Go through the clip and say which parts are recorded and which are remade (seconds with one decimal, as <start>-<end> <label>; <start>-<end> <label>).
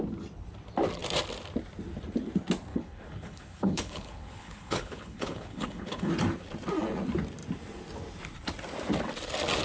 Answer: 0.0-2.7 recorded; 2.7-6.1 remade; 6.1-9.6 recorded